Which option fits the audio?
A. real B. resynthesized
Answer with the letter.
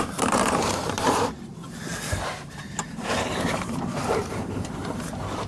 B